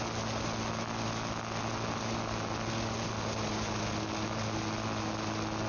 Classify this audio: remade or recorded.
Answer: recorded